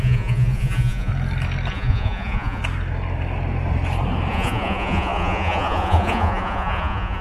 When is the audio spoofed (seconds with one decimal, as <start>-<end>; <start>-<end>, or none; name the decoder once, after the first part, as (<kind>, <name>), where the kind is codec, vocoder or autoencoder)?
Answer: 0.0-1.1 (vocoder, Vocos); 1.7-2.6; 4.3-7.2